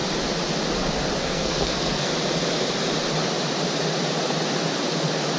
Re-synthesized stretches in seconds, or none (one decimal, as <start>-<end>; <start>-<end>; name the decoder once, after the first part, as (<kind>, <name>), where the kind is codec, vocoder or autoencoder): 1.2-2.1 (codec, SNAC)